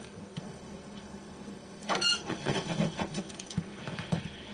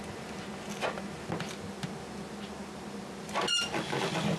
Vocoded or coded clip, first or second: first